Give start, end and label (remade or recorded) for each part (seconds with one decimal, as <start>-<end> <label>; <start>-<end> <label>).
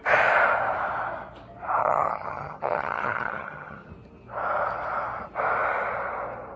0.0-1.8 recorded; 1.8-3.9 remade; 3.9-6.6 recorded